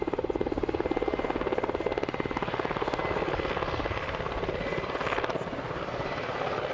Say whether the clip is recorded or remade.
recorded